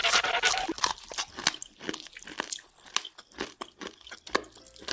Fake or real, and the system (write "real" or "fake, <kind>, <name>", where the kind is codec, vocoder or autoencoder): real